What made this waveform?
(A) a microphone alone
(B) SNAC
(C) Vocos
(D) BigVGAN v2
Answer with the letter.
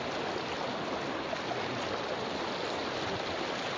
A